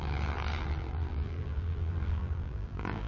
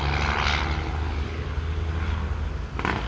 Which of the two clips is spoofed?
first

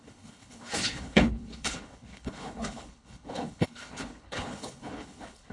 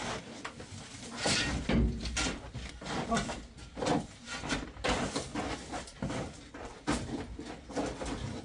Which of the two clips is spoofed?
first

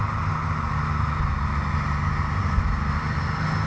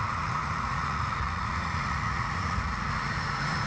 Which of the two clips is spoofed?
second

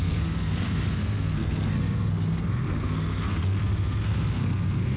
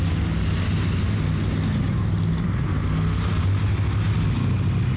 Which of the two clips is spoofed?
first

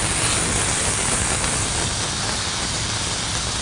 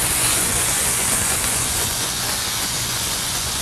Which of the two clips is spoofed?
second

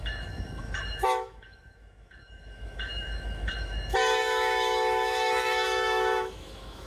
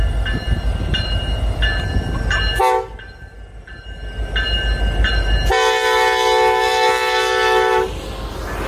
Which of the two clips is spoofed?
first